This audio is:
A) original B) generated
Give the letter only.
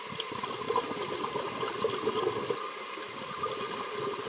A